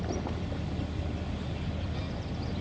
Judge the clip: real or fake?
real